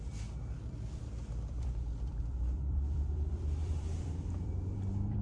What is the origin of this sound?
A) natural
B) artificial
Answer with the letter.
B